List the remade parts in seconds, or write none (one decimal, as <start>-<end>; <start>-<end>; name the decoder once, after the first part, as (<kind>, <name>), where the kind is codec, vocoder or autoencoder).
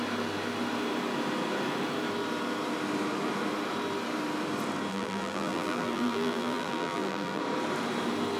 4.9-7.4 (vocoder, BigVGAN v2)